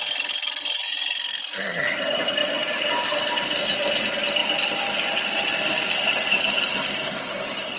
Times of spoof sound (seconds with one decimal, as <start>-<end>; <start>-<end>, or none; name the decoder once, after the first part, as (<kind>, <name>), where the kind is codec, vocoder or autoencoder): none

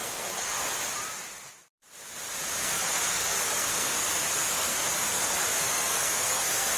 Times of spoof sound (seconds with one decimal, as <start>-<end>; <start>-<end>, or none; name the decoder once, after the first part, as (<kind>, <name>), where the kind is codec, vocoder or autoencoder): 0.0-0.8 (codec, SNAC); 2.6-6.8

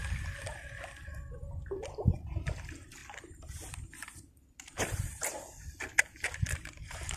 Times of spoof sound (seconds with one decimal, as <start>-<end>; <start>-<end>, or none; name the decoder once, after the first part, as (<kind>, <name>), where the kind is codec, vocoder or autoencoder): none

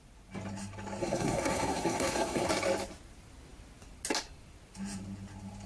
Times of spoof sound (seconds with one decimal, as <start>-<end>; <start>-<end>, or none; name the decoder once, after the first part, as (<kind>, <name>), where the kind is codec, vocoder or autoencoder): 1.0-2.5 (codec, SNAC)

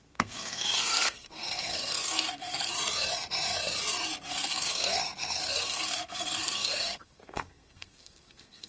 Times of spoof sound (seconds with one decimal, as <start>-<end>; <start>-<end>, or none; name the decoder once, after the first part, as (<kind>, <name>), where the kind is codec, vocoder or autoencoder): 0.0-2.7 (codec, SNAC); 4.3-8.7

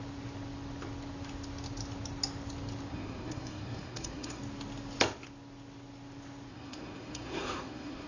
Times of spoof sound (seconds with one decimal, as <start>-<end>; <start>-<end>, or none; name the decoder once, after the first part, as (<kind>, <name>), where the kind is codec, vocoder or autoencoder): 2.9-4.4 (codec, SNAC); 6.5-8.1

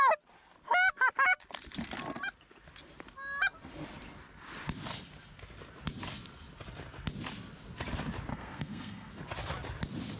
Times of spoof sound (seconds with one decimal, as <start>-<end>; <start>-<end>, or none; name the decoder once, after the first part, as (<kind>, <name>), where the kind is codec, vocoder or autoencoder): 8.3-9.1 (codec, SNAC)

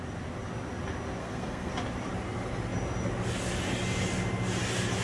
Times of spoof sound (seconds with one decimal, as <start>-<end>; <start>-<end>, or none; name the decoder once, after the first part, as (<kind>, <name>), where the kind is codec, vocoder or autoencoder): 1.2-1.7 (codec, SNAC)